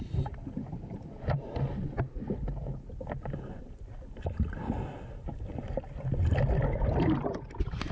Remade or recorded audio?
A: recorded